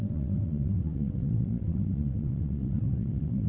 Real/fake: fake